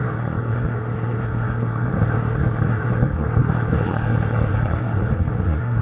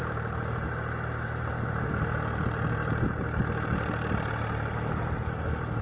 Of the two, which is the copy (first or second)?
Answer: first